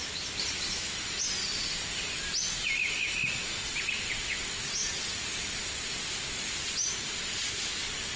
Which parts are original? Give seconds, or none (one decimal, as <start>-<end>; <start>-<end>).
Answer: 0.0-8.2

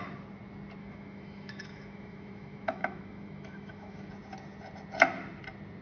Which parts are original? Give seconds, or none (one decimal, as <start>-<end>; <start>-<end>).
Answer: 0.0-0.8; 4.1-5.8